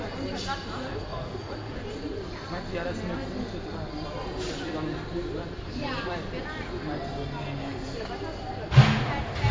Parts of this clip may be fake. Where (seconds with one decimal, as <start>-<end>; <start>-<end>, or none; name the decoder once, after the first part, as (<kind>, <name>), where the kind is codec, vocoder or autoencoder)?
1.1-1.8 (vocoder, Vocos)